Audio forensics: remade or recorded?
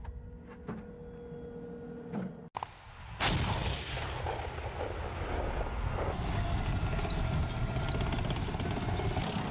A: recorded